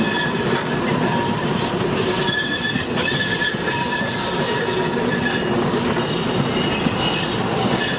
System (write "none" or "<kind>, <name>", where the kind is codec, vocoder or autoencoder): none